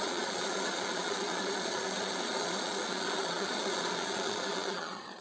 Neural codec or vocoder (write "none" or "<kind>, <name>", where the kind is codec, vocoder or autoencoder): vocoder, Vocos